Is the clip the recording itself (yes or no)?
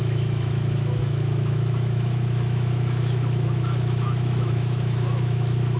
no